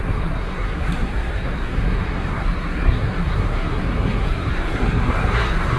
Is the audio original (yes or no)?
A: no